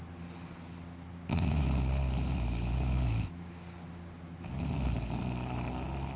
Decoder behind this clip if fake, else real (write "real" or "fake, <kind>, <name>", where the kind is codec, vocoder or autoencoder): real